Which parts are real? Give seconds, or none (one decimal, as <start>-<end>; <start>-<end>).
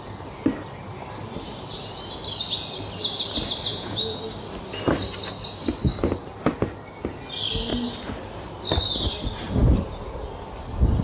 0.0-3.7; 4.2-11.0